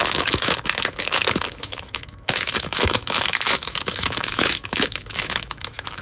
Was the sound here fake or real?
fake